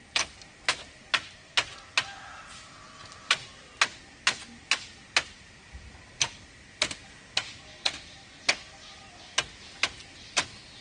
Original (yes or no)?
yes